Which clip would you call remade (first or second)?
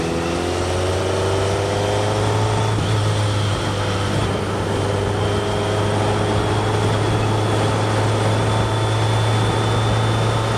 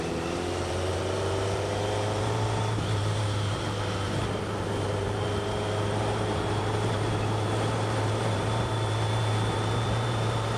second